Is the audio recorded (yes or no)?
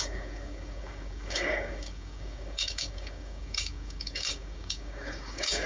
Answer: no